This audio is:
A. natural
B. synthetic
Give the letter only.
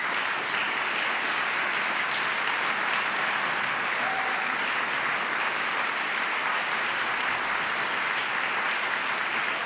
A